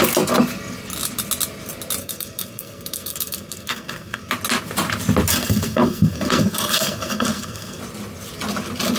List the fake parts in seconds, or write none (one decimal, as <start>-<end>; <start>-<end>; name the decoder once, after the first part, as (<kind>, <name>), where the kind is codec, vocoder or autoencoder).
2.0-4.3 (codec, SNAC); 5.3-7.8